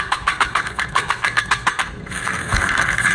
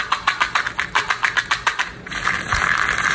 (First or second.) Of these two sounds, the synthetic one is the first